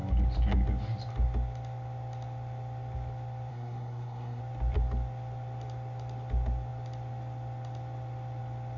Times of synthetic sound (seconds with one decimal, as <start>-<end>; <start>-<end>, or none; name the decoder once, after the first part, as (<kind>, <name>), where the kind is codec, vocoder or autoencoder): 3.5-4.4 (codec, SNAC)